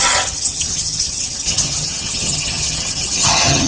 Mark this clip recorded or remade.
remade